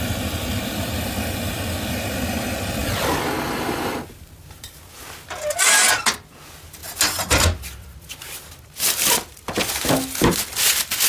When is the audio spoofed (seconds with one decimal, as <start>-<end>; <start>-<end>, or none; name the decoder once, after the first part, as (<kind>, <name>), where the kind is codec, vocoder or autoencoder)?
none